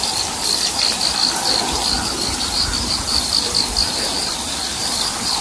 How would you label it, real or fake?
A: real